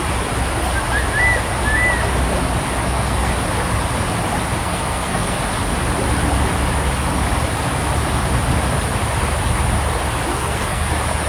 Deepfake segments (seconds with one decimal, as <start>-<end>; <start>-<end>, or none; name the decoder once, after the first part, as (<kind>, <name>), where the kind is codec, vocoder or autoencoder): 2.8-3.3 (codec, SNAC); 4.6-5.4; 10.3-10.9